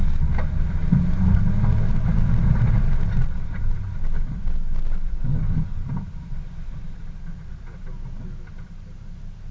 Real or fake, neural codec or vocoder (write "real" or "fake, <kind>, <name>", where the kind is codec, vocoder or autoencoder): real